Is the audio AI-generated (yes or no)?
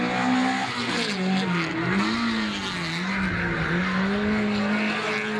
no